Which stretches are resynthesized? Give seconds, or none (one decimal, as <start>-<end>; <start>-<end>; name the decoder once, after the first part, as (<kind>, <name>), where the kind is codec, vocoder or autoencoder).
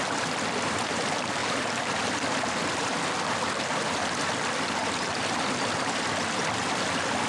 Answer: none